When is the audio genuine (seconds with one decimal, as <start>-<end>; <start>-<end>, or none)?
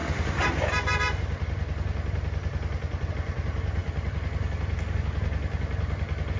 0.0-6.4